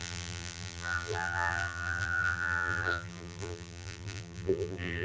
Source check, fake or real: fake